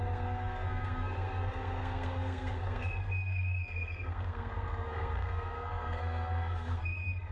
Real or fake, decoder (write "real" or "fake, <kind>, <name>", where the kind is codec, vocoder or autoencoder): fake, codec, SNAC